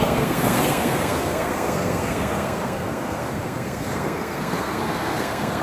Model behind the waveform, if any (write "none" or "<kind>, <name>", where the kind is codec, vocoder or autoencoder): codec, SNAC